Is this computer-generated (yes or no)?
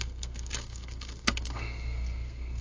yes